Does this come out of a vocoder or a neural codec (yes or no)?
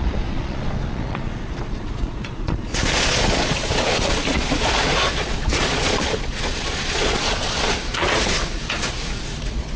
yes